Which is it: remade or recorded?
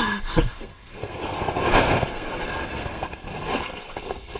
remade